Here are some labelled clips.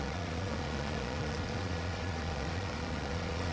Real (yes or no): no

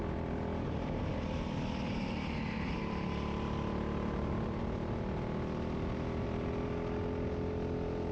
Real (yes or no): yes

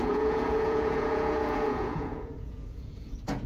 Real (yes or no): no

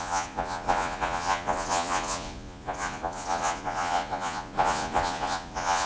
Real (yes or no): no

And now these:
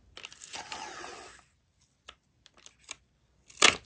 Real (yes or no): yes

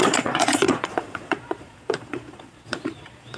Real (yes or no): no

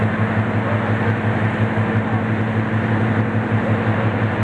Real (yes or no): yes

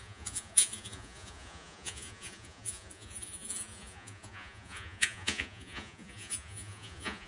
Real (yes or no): no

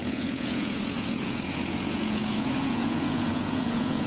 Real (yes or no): no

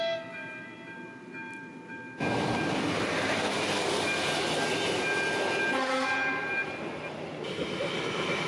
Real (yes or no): yes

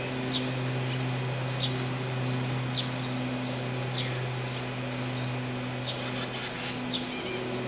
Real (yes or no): yes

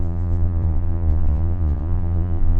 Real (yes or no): no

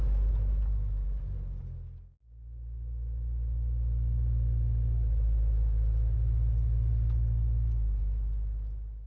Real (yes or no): yes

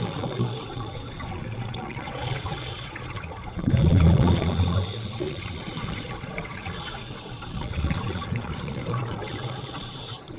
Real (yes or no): no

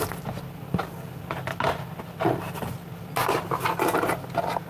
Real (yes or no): yes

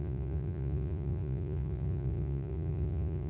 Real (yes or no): no